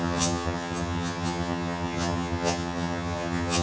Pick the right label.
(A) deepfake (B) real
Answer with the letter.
A